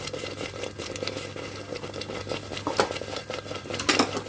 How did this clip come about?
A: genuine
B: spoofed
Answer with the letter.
A